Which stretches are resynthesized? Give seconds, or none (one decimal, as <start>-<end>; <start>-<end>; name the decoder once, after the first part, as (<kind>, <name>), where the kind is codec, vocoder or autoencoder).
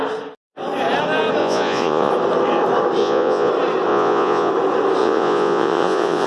1.4-2.1 (vocoder, Vocos); 3.0-3.5; 3.9-4.5; 5.0-6.3